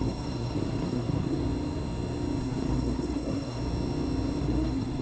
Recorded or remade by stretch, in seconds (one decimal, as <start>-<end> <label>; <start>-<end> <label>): 0.0-1.4 remade; 1.4-2.4 recorded; 2.4-3.6 remade; 3.6-4.4 recorded; 4.4-5.0 remade